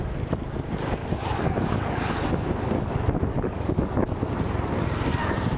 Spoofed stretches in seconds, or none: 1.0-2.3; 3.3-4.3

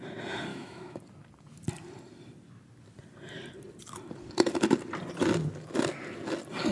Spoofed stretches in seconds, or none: 0.5-1.0